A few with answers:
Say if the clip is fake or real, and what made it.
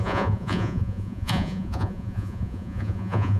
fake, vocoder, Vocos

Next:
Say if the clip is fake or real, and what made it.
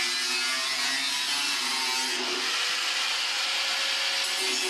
real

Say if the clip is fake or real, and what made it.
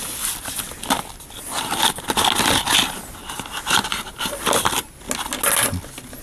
real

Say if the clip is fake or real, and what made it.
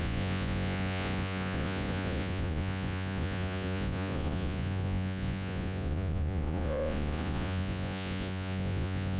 fake, vocoder, Vocos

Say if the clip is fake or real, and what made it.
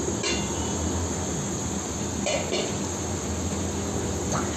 real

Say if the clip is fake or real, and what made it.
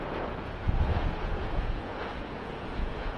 fake, vocoder, Vocos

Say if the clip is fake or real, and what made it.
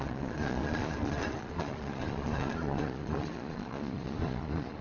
fake, vocoder, Vocos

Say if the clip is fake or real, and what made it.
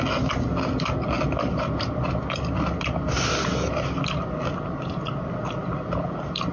real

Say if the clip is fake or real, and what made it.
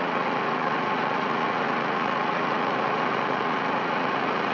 fake, vocoder, Vocos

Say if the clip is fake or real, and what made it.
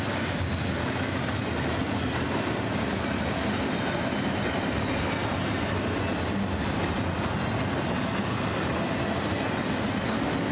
real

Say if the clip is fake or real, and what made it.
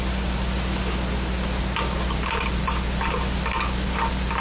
real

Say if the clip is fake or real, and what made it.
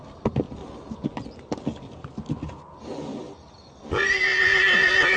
real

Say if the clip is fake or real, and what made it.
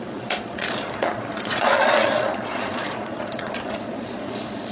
fake, vocoder, Vocos